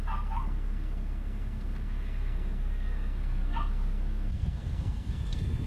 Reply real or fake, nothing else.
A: fake